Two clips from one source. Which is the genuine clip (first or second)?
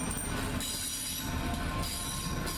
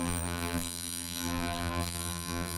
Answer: first